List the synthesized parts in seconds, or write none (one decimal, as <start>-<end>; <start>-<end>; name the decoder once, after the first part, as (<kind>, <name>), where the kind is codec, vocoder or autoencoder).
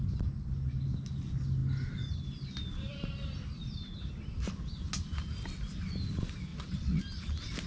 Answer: 6.5-7.0 (vocoder, WaveNeXt)